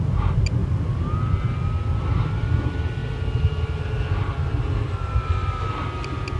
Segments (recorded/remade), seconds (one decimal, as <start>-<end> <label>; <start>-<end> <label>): 0.0-6.4 recorded